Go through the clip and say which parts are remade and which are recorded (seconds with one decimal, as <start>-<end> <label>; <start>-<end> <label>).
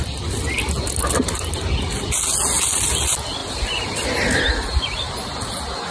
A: 0.0-5.9 recorded